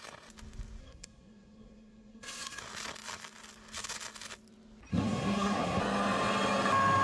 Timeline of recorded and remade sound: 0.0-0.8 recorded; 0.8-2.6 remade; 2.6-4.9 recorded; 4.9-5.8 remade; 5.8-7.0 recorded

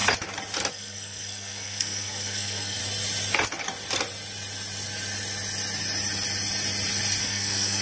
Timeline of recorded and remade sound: 0.0-0.7 recorded; 0.7-2.8 remade; 2.8-7.2 recorded; 7.2-7.8 remade

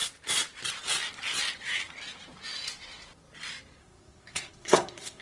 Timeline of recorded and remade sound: 0.0-3.8 recorded; 3.8-5.2 remade

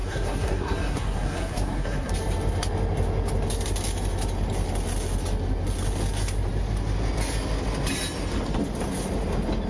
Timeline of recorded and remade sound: 0.0-2.1 remade; 2.1-9.7 recorded

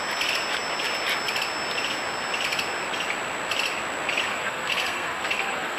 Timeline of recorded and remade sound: 0.0-4.3 recorded; 4.3-5.8 remade